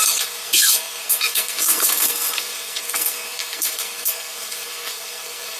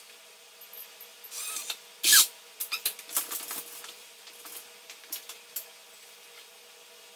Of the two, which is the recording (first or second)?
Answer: second